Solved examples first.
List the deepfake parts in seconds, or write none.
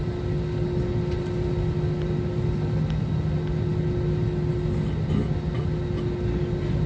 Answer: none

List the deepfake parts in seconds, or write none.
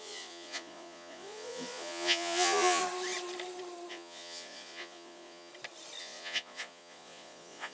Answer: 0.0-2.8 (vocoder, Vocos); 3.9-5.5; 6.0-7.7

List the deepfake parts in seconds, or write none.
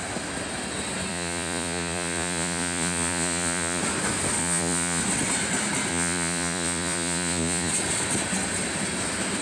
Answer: 1.1-3.8 (vocoder, Vocos); 4.4-5.0; 5.9-7.7